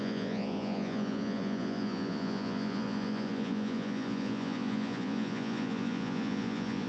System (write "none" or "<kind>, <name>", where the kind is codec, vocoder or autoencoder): vocoder, Vocos